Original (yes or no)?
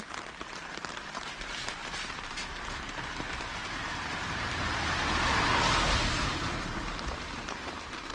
no